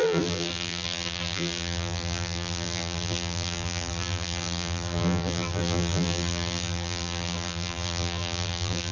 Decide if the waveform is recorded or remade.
remade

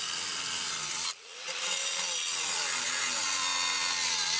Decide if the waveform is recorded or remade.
recorded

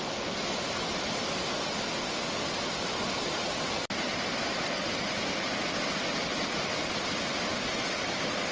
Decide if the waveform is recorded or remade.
recorded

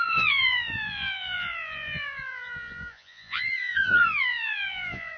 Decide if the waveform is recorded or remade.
remade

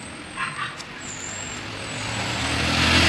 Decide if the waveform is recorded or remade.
recorded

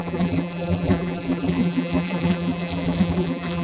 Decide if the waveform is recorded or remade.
remade